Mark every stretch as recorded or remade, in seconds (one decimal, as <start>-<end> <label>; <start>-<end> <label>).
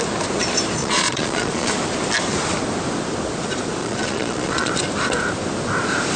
0.0-0.8 recorded; 0.8-1.7 remade; 1.7-3.8 recorded; 3.8-4.7 remade; 4.7-6.2 recorded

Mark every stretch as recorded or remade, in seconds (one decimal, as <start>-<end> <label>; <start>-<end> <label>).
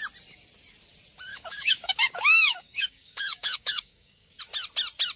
0.0-1.3 recorded; 1.3-4.4 remade; 4.4-5.2 recorded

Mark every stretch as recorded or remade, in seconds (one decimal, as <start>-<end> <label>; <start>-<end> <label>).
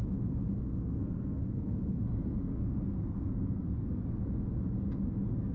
0.0-0.6 recorded; 0.6-3.9 remade; 3.9-5.5 recorded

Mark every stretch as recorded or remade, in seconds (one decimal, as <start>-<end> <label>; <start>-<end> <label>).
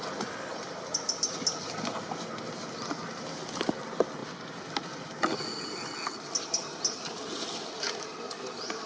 0.0-8.9 recorded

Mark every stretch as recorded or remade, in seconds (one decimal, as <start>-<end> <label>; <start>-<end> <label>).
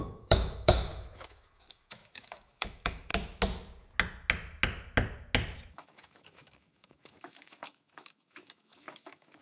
0.0-3.1 remade; 3.1-5.7 recorded; 5.7-9.4 remade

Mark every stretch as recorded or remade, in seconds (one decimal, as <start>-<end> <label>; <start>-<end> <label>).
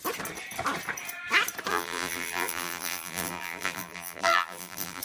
0.0-1.7 recorded; 1.7-5.0 remade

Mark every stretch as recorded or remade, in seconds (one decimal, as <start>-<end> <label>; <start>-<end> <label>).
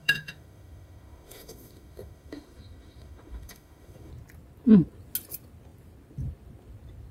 0.0-4.1 remade; 4.1-7.1 recorded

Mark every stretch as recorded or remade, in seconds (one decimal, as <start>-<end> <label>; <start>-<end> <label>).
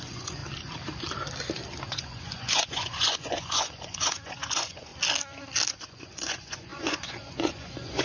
0.0-0.4 remade; 0.4-1.8 recorded; 1.8-4.9 remade; 4.9-5.7 recorded; 5.7-8.0 remade